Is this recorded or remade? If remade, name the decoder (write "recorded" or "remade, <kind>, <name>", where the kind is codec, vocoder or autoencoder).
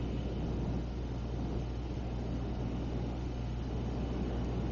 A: recorded